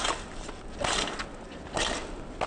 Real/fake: real